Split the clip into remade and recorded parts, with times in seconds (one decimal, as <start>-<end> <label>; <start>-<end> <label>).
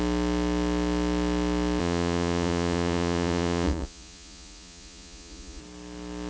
0.0-1.8 recorded; 1.8-5.6 remade; 5.6-6.3 recorded